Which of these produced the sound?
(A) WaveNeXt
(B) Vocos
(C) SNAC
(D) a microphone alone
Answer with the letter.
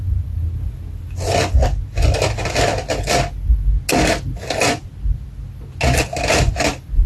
D